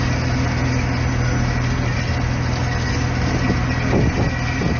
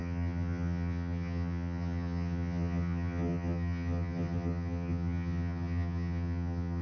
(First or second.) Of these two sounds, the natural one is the first